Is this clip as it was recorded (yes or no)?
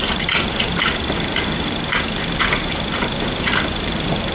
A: no